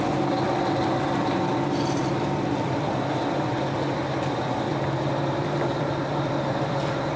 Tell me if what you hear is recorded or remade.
remade